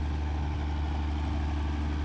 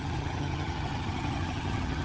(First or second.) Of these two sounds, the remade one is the second